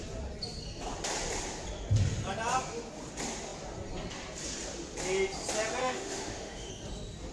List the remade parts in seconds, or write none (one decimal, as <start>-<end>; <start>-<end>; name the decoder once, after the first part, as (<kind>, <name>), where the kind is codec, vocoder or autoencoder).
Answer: 5.8-6.7 (autoencoder, DAC-VAE)